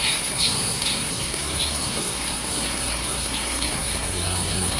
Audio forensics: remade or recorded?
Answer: remade